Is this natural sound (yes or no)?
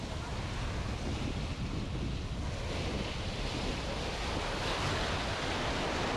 yes